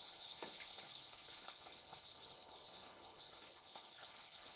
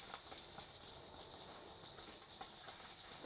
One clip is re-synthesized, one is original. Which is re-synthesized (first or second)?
first